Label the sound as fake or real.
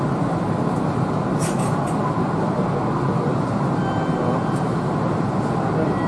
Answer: real